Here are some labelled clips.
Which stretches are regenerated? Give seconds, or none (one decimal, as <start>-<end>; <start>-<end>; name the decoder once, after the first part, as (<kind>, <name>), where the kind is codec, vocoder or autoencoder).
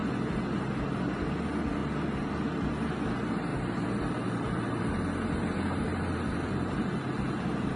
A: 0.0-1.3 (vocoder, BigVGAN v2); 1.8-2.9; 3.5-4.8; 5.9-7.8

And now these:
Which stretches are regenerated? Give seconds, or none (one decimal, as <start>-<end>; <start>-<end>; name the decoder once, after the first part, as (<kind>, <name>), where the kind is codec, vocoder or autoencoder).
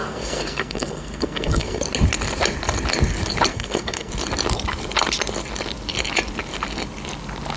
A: 0.0-1.8 (codec, SNAC); 3.5-4.1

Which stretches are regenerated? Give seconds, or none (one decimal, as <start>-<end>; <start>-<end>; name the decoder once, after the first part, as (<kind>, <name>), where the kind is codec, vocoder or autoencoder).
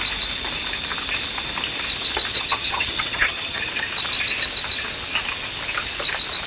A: 2.3-3.7 (vocoder, HiFi-GAN)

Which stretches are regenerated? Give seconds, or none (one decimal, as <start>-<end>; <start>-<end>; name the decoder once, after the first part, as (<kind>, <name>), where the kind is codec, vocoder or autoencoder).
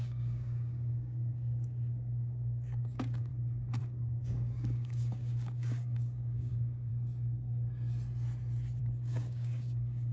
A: 0.0-3.3 (codec, DAC); 3.8-6.9; 8.8-10.1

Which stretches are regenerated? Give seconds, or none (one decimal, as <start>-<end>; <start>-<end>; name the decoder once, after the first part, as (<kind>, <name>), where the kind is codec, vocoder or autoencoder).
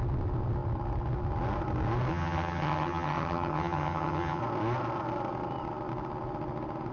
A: 2.1-4.4 (vocoder, HiFi-GAN)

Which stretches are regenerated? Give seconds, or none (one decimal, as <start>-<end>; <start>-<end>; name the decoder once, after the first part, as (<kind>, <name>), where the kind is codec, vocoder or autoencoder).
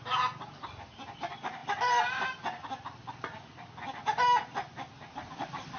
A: none